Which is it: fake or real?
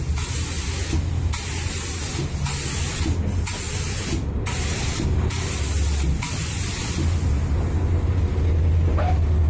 real